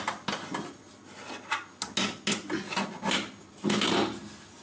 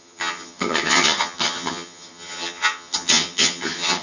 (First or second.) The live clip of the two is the first